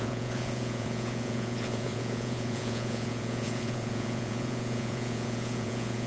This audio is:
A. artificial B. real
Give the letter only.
A